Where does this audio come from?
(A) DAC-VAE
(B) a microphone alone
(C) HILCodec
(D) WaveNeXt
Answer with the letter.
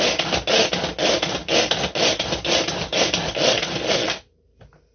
B